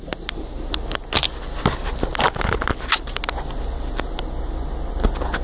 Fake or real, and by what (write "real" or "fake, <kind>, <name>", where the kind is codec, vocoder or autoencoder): real